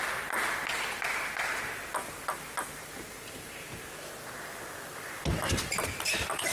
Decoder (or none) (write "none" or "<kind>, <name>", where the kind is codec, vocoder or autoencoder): none